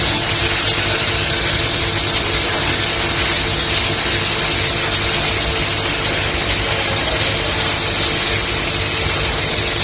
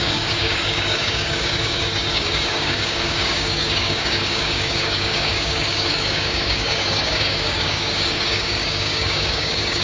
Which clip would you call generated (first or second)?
second